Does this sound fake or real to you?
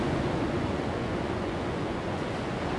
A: fake